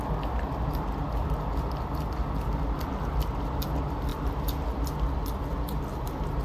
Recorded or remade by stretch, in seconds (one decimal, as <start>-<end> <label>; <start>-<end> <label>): 0.0-6.4 recorded

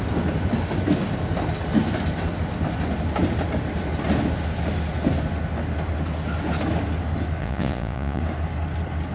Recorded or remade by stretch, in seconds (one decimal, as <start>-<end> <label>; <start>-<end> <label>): 0.0-7.4 recorded; 7.4-8.2 remade; 8.2-9.1 recorded

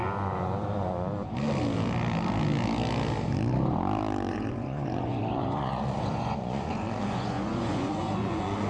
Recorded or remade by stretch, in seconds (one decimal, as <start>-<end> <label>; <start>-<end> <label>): 0.0-4.3 recorded; 4.3-8.7 remade

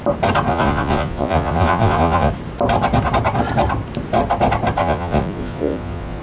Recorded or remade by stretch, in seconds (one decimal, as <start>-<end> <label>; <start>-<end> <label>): 0.0-0.5 recorded; 0.5-2.3 remade; 2.3-4.8 recorded; 4.8-6.2 remade

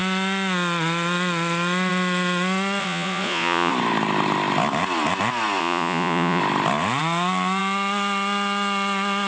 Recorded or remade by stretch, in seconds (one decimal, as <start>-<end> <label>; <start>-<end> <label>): 0.0-2.8 recorded; 2.8-3.7 remade; 3.7-5.6 recorded; 5.6-6.4 remade; 6.4-9.3 recorded

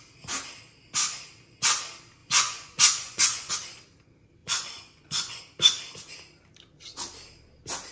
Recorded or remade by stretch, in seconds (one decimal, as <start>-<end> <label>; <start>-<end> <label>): 0.0-2.2 recorded; 2.2-3.5 remade; 3.5-4.4 recorded; 4.4-5.4 remade; 5.4-7.9 recorded